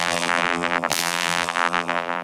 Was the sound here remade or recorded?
remade